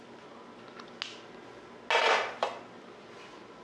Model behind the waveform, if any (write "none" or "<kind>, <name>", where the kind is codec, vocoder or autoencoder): none